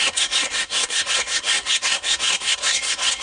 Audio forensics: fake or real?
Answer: fake